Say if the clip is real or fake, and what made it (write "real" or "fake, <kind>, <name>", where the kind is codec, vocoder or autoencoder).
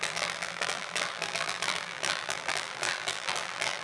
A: fake, vocoder, BigVGAN v2